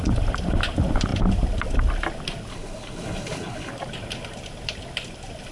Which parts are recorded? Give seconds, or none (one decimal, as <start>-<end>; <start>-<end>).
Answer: 0.0-2.5; 3.7-5.5